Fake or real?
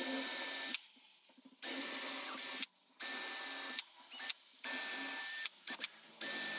real